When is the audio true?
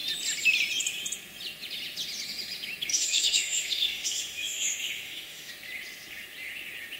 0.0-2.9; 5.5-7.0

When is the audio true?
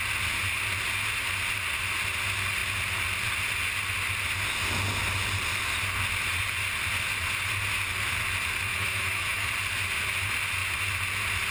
0.0-8.7; 9.5-11.5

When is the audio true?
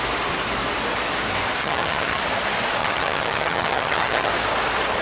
0.0-1.6; 2.2-2.8; 4.3-5.0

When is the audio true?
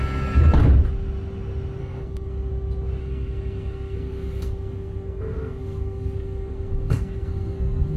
0.0-1.8; 2.5-3.0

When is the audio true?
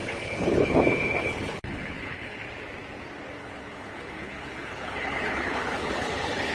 2.4-3.4